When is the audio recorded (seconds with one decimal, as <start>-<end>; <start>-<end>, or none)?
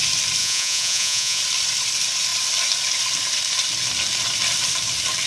0.0-0.4; 1.4-5.3